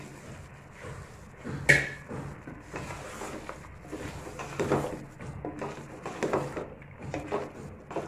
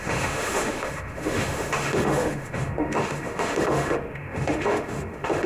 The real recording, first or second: first